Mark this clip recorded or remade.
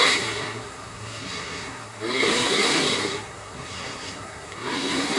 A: remade